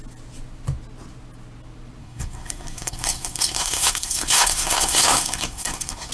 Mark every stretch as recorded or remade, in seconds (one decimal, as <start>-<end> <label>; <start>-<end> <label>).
0.0-2.0 recorded; 2.0-6.1 remade

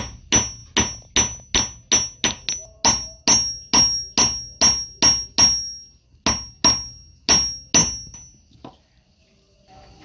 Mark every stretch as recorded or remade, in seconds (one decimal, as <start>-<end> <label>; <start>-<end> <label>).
0.0-10.0 recorded

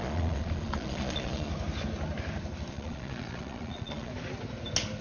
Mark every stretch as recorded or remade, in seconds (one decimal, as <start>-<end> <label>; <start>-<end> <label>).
0.0-1.5 remade; 1.5-2.7 recorded; 2.7-4.1 remade; 4.1-5.0 recorded

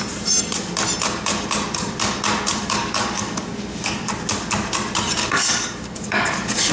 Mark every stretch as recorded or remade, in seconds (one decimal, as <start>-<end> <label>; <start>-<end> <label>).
0.0-2.6 recorded; 2.6-4.1 remade; 4.1-5.2 recorded; 5.2-6.7 remade

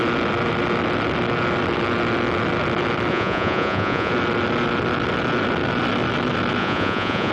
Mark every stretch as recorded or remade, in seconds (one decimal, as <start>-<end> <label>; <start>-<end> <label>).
0.0-3.1 recorded; 3.1-4.1 remade; 4.1-6.6 recorded; 6.6-7.3 remade

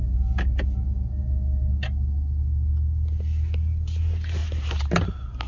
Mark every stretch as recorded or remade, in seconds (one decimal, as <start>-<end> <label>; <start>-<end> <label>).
0.0-5.5 recorded

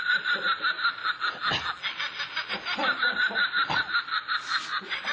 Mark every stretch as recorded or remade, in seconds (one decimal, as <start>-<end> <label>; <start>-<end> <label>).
0.0-1.0 remade; 1.0-2.5 recorded; 2.5-5.1 remade